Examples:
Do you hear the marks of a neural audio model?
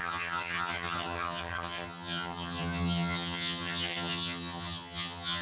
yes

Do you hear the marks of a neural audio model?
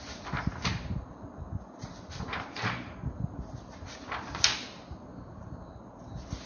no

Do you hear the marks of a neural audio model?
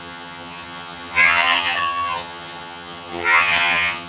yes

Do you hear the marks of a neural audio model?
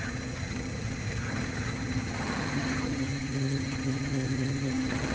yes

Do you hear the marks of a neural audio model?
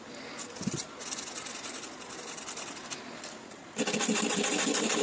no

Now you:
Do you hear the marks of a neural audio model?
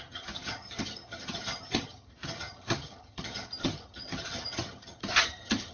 yes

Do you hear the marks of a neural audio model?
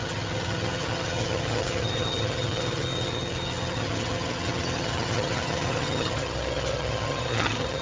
yes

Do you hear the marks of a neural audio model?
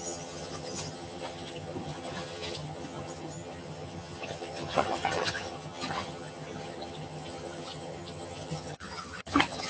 yes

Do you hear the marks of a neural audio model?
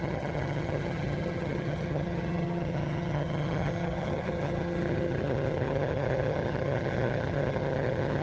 yes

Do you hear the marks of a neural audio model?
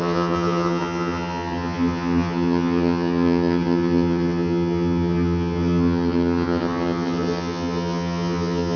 yes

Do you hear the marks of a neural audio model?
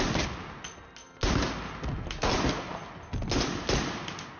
no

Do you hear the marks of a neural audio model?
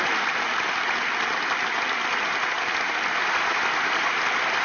no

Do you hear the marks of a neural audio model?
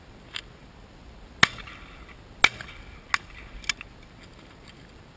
no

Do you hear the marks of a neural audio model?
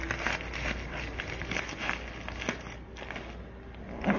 no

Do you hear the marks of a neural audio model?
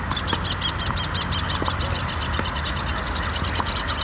no